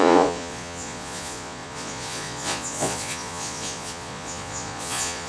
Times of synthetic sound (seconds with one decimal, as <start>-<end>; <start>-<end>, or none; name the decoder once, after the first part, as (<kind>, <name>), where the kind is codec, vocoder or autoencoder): 0.0-5.3 (vocoder, Vocos)